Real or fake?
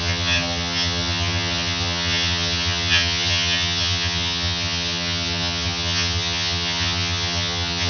fake